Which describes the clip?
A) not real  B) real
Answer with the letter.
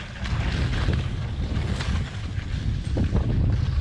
B